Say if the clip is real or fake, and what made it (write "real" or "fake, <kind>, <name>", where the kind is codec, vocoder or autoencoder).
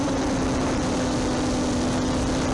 real